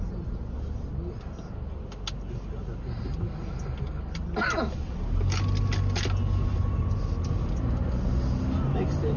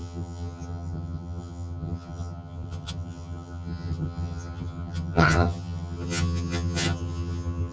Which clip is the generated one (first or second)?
second